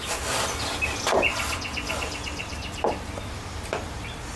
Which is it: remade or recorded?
remade